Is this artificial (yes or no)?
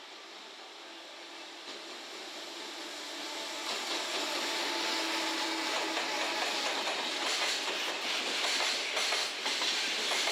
no